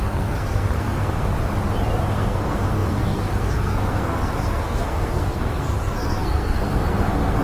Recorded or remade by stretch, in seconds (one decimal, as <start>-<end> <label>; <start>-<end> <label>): 0.0-1.3 remade; 1.3-2.1 recorded; 2.1-7.4 remade